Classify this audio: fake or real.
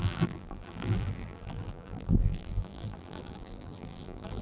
fake